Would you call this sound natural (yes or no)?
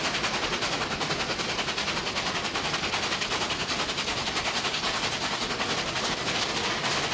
yes